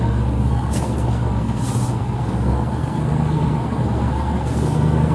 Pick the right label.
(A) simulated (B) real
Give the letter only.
A